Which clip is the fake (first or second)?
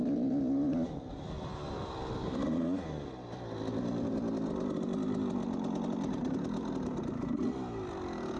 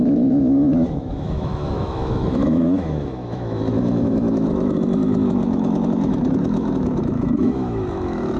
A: second